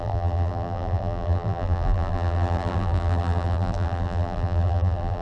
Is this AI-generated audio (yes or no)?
yes